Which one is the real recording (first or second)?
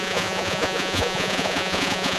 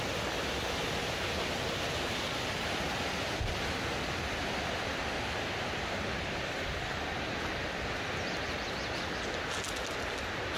second